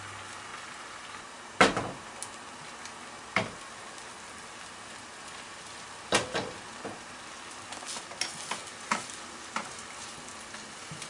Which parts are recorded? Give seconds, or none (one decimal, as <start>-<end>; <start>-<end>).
0.0-11.1